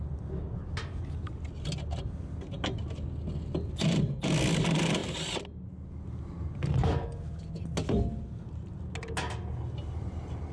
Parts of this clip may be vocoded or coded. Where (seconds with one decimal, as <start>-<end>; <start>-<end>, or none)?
none

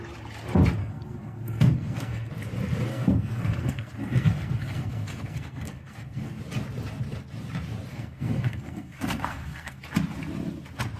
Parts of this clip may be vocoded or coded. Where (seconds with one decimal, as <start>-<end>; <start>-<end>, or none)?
0.8-2.3; 2.9-6.4; 7.9-9.8

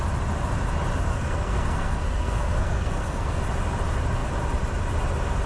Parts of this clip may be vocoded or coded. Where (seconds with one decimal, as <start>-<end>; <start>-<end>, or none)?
1.1-3.4

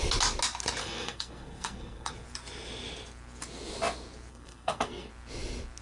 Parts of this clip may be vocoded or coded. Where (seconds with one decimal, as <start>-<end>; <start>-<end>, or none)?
0.8-2.1; 4.3-5.1

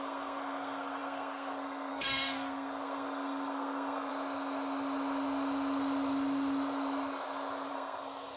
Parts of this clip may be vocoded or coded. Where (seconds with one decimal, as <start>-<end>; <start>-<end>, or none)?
0.0-4.1; 7.7-8.4

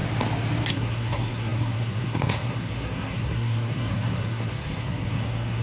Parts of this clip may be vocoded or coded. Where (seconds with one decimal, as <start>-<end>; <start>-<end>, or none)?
0.7-5.6

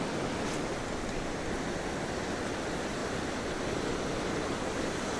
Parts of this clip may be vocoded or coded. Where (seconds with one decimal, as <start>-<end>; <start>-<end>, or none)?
none